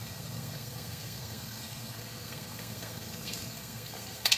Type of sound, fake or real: fake